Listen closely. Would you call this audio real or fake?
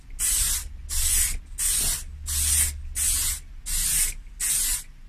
real